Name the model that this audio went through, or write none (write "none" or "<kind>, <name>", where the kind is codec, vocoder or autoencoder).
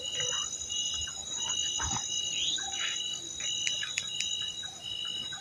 none